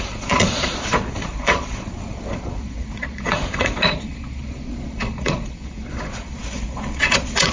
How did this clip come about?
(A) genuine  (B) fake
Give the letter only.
B